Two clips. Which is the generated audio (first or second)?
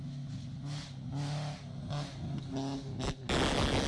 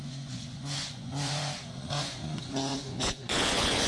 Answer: second